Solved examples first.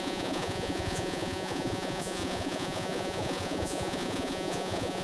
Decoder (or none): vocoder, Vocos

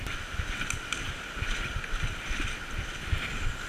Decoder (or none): none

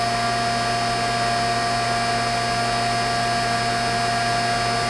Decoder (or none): none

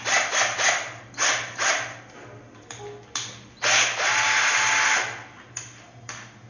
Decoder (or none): none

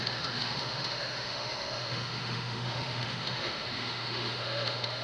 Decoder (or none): autoencoder, DAC-VAE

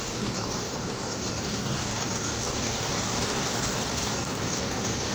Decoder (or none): codec, DAC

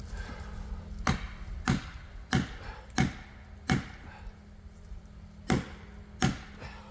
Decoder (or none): none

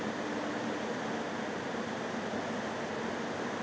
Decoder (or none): none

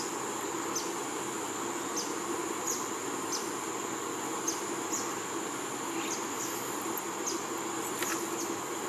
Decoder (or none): none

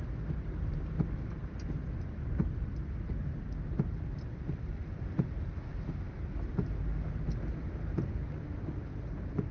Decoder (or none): none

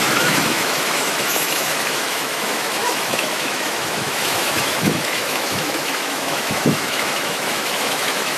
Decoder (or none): autoencoder, DAC-VAE